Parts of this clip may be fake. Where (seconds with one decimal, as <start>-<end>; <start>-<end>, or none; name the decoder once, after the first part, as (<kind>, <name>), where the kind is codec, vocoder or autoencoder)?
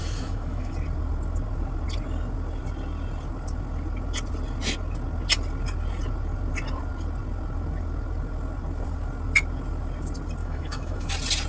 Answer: 0.0-0.7 (autoencoder, DAC-VAE); 10.4-11.1